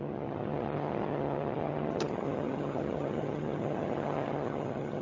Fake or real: fake